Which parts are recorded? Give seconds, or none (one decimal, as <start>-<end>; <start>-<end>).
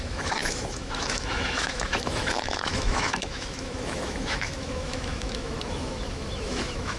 none